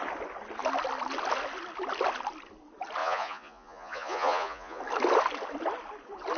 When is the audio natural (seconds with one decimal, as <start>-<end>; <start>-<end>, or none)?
0.0-3.0; 4.8-6.4